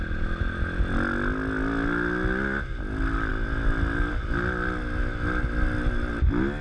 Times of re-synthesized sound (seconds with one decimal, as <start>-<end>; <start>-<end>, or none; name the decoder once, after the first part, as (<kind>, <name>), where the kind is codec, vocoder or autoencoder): none